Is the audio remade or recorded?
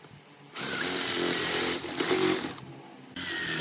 recorded